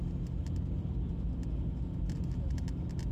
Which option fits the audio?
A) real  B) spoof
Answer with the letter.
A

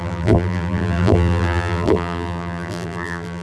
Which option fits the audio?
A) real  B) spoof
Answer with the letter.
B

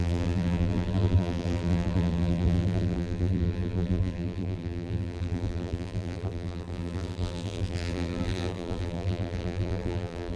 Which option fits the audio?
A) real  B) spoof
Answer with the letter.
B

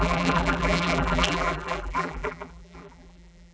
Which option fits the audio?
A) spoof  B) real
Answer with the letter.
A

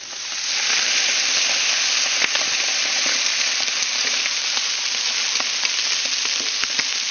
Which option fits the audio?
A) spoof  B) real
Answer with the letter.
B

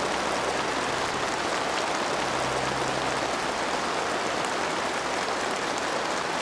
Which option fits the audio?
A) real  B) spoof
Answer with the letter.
A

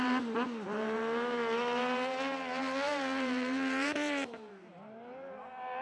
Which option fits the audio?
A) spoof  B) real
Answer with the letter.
A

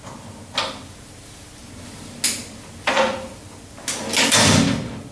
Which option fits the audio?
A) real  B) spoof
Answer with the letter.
A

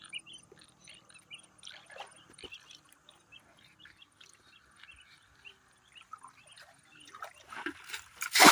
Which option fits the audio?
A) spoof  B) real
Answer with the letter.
B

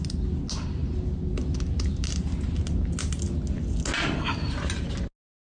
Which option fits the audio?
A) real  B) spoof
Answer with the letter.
A